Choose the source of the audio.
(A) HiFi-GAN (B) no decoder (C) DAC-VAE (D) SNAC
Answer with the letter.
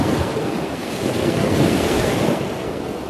D